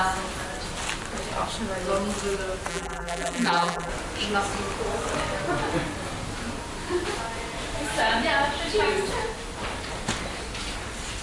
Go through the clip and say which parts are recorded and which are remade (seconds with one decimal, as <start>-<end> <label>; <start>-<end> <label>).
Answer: 0.0-2.7 recorded; 2.7-3.9 remade; 3.9-11.2 recorded